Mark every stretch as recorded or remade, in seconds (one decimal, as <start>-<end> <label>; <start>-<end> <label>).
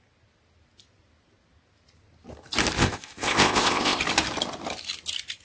0.0-2.8 recorded; 2.8-4.0 remade; 4.0-5.4 recorded